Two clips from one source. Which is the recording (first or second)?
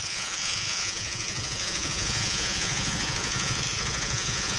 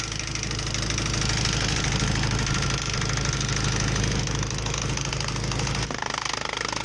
second